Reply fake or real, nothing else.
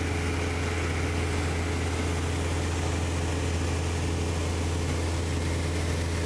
real